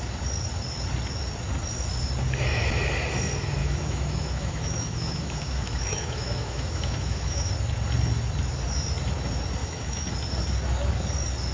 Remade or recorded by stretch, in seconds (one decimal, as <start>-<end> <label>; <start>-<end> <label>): 0.0-3.6 recorded; 3.6-7.5 remade; 7.5-9.6 recorded; 9.6-10.1 remade; 10.1-11.5 recorded